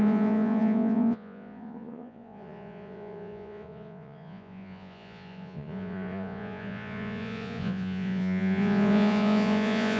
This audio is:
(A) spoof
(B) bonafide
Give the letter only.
A